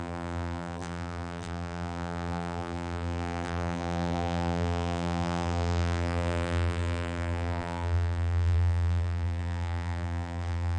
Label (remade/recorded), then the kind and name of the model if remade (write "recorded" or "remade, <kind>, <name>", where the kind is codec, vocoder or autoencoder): remade, vocoder, BigVGAN v2